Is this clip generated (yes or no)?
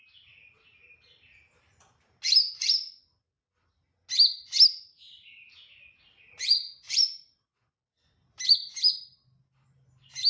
no